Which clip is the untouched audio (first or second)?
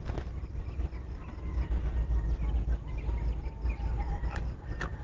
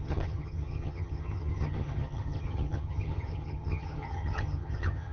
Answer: first